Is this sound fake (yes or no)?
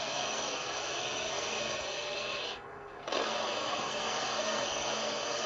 yes